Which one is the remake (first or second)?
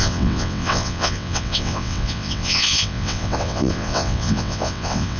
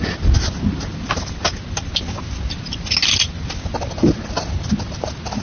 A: first